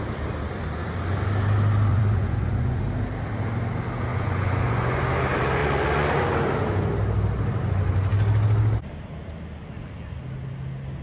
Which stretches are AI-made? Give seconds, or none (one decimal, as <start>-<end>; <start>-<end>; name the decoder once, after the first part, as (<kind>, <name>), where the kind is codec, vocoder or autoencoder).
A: 1.9-2.8 (vocoder, Vocos); 4.1-5.0; 5.6-6.2